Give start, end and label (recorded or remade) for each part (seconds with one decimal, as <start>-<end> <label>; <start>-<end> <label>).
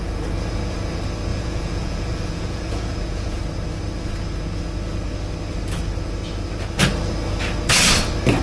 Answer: 0.0-1.3 recorded; 1.3-3.4 remade; 3.4-8.4 recorded